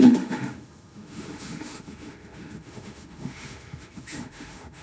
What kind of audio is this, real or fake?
fake